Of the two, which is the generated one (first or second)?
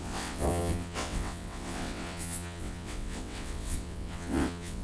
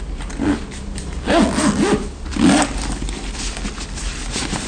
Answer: first